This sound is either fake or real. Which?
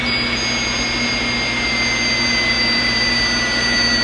real